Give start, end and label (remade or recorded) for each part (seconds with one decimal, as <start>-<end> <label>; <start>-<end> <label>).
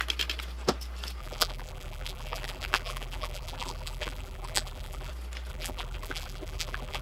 0.0-1.2 recorded; 1.2-5.1 remade; 5.1-5.5 recorded; 5.5-7.0 remade